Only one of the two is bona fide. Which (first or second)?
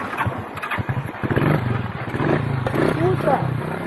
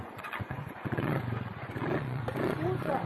first